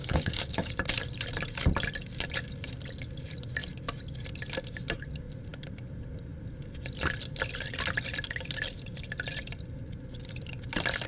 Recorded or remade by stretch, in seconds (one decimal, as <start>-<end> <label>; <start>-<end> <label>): 0.0-0.7 remade; 0.7-11.1 recorded